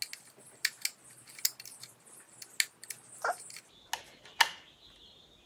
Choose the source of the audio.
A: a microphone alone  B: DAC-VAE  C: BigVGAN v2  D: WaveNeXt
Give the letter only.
A